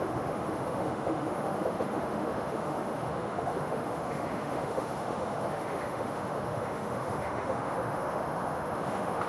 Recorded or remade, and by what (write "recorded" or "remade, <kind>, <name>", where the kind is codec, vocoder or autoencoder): remade, autoencoder, DAC-VAE